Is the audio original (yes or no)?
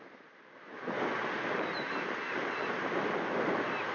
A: yes